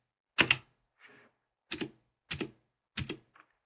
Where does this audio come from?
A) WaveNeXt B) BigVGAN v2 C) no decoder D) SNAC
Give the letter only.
C